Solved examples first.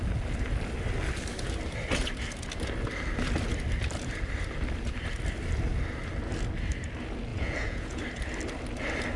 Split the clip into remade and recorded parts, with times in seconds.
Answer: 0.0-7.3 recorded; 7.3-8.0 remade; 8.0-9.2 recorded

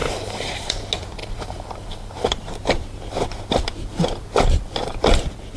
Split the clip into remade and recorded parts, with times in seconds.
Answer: 0.0-0.7 remade; 0.7-1.2 recorded; 1.2-2.4 remade; 2.4-5.6 recorded

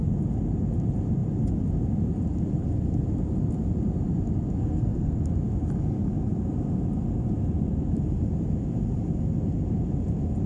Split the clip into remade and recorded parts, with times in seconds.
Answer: 0.0-4.6 recorded; 4.6-5.2 remade; 5.2-10.5 recorded